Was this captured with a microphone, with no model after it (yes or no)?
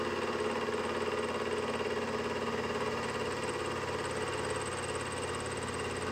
yes